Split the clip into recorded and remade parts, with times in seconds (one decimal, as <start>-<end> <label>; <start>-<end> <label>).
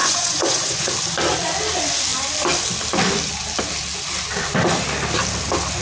0.0-0.9 remade; 0.9-5.8 recorded